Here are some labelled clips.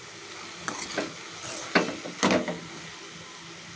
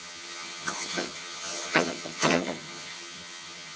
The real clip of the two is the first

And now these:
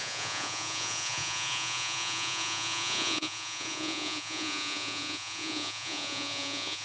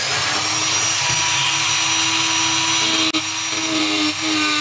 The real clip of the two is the second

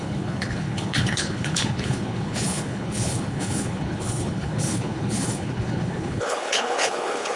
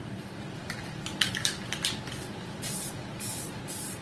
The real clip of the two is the second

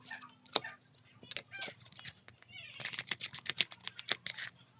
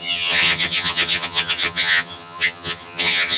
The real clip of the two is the first